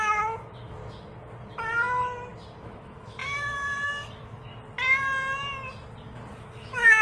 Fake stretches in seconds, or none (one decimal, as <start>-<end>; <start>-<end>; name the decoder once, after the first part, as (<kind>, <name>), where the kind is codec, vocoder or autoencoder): 0.0-0.8 (autoencoder, DAC-VAE); 2.6-4.5; 6.4-7.0

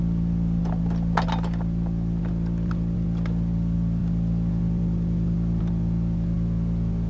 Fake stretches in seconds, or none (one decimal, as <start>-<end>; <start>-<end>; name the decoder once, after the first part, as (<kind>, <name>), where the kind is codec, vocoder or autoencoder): none